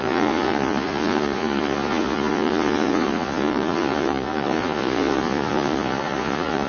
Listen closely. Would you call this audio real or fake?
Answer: fake